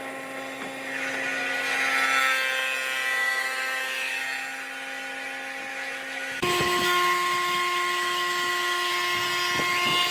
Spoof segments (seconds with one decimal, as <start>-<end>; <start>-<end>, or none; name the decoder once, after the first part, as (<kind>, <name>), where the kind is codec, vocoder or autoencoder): 3.2-4.2 (autoencoder, DAC-VAE); 5.7-8.9